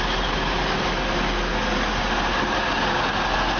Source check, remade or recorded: recorded